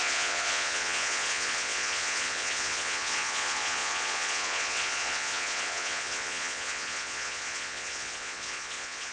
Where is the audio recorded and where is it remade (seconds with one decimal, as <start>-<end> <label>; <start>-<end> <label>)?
0.0-9.1 remade